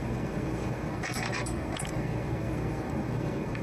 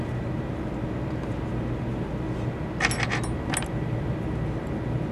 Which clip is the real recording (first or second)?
second